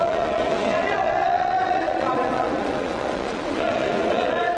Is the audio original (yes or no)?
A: no